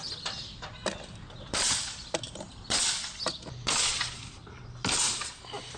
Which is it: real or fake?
real